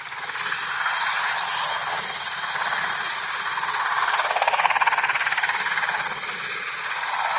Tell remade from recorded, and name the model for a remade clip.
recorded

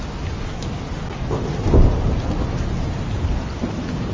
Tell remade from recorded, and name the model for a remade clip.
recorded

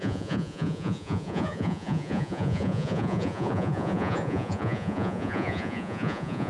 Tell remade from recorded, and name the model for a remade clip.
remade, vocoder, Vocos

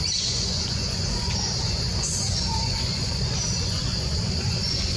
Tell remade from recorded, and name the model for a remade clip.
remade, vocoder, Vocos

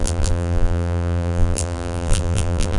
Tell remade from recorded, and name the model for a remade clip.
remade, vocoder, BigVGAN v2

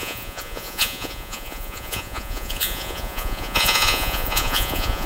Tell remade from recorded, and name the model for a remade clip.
remade, vocoder, Vocos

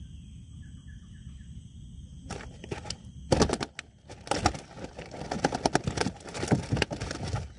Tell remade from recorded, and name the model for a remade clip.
recorded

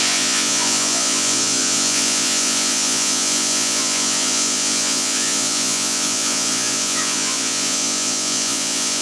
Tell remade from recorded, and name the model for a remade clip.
remade, vocoder, Vocos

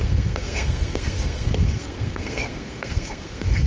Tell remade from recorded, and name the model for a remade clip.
remade, codec, SNAC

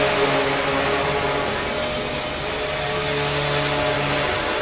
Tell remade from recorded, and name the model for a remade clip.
recorded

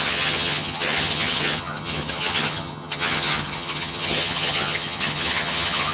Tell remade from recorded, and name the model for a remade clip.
remade, vocoder, HiFi-GAN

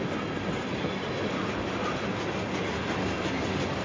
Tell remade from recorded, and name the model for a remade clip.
recorded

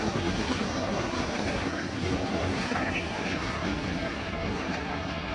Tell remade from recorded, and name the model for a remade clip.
remade, codec, SNAC